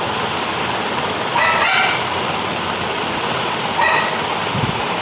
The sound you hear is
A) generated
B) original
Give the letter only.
B